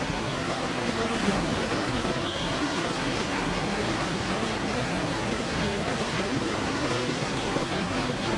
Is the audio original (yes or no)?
no